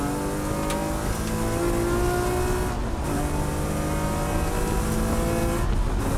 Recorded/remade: recorded